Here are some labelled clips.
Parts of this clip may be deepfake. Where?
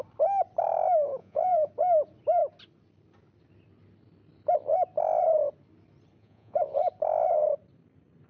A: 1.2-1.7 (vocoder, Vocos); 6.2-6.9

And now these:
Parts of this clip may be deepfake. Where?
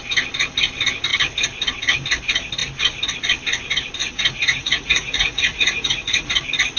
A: 4.0-6.3 (vocoder, Vocos)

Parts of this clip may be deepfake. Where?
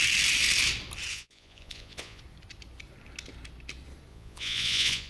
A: 1.1-2.2 (vocoder, Vocos); 4.1-5.1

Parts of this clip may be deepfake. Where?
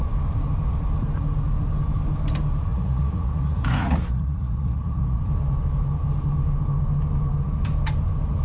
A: 2.7-5.2 (vocoder, Vocos)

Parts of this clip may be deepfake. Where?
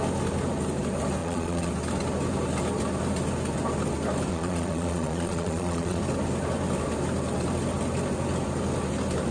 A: 1.2-1.7 (vocoder, Vocos); 4.3-6.0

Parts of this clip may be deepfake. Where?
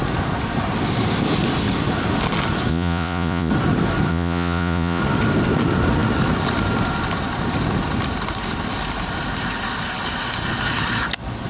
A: 2.7-3.5 (vocoder, Vocos); 4.1-5.0